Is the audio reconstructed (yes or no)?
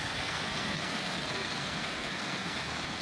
yes